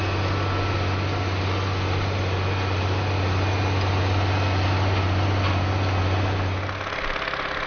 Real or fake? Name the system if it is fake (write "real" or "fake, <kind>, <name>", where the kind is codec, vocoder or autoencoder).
real